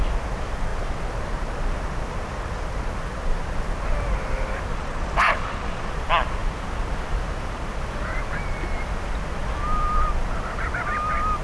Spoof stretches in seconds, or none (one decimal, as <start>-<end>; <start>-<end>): 4.7-5.9